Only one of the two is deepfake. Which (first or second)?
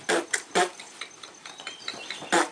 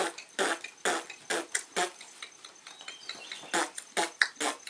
first